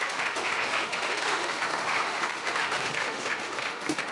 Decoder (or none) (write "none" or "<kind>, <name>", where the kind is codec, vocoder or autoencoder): autoencoder, DAC-VAE